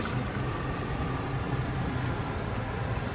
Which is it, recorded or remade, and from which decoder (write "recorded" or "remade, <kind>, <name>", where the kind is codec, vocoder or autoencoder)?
recorded